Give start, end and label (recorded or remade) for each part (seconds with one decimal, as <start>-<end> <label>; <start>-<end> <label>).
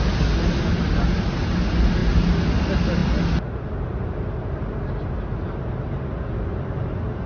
0.0-7.3 recorded